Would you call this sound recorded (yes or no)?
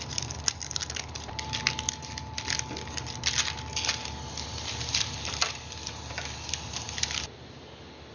yes